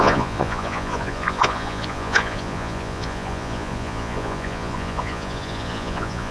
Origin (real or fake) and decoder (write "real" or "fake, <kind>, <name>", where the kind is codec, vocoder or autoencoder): fake, vocoder, Vocos